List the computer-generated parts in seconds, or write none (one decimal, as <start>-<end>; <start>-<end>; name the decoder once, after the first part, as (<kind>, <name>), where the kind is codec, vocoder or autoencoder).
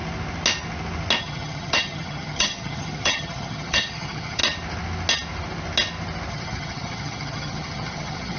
1.2-4.4 (vocoder, HiFi-GAN); 6.3-8.4